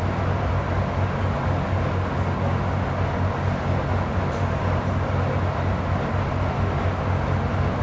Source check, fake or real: real